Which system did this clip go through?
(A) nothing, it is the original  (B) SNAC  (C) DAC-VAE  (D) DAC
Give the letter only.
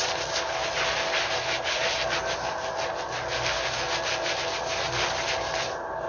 A